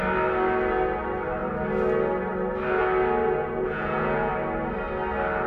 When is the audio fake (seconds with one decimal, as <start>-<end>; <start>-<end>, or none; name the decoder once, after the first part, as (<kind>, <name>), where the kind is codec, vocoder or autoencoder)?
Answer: 3.4-4.3 (vocoder, Vocos)